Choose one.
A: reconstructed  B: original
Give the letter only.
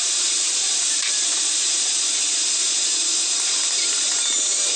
A